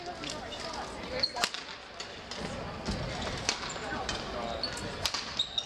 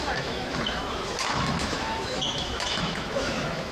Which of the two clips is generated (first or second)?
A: second